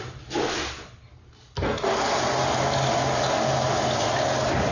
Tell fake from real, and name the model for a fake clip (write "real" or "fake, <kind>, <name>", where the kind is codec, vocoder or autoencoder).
real